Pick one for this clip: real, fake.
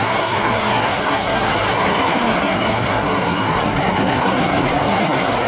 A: fake